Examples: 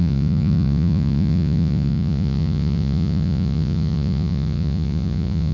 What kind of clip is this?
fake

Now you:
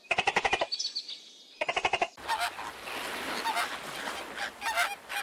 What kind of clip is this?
real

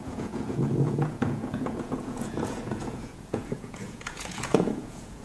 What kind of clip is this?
fake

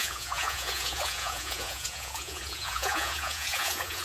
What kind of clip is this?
fake